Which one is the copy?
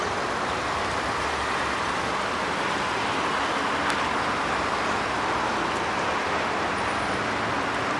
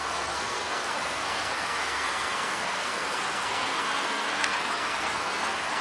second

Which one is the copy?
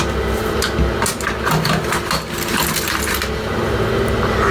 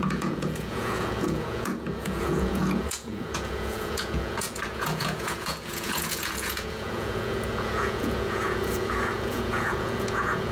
second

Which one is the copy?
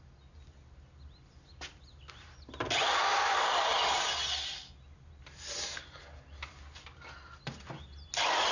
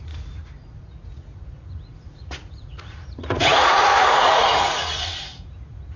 second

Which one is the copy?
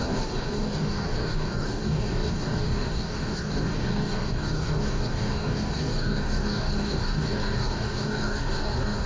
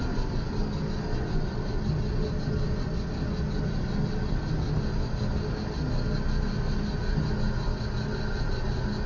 first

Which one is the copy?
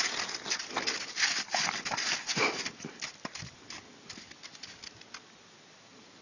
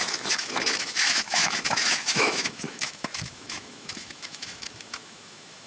second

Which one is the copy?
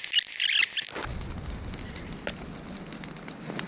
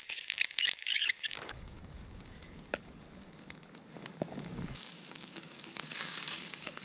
second